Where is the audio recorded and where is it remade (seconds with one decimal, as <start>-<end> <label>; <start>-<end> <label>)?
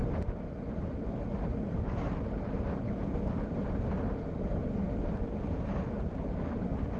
0.0-7.0 recorded